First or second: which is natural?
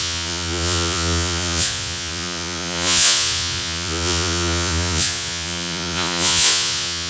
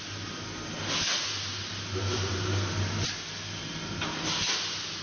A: second